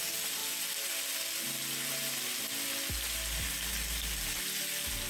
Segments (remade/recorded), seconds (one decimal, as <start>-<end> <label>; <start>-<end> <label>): 0.0-5.1 recorded